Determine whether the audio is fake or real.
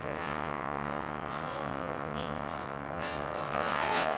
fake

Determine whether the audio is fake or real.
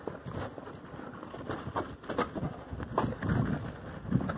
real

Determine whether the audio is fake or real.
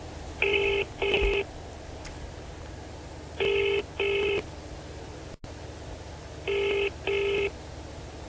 real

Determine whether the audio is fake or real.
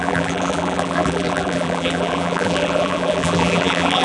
fake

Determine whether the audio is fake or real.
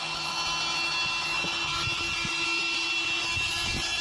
real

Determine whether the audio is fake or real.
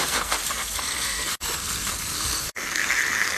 fake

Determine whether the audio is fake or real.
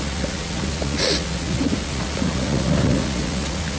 fake